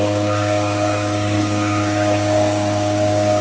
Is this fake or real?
fake